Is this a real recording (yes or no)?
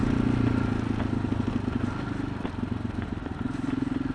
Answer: yes